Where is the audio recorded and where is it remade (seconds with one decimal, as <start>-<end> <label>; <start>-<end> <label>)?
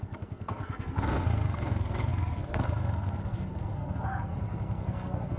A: 0.0-5.4 remade